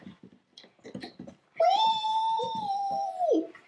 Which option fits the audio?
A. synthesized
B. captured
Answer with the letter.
A